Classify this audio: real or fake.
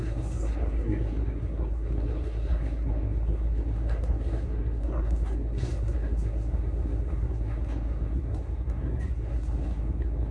fake